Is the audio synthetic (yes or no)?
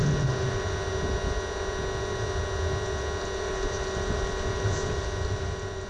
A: no